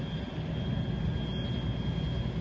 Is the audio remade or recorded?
recorded